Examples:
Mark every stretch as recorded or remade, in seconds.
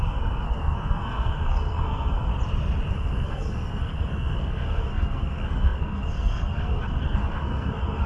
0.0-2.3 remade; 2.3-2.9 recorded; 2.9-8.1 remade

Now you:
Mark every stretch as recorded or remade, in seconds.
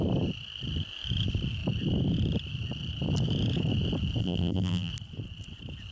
0.0-4.2 recorded; 4.2-4.9 remade; 4.9-5.9 recorded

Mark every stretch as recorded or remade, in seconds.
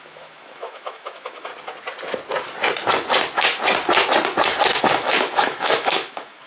0.0-1.5 remade; 1.5-4.8 recorded; 4.8-6.5 remade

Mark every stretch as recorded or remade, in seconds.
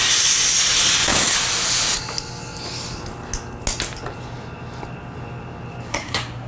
0.0-5.9 recorded; 5.9-6.5 remade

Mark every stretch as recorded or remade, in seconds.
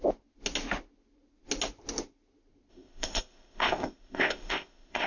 0.0-2.7 recorded; 2.7-5.1 remade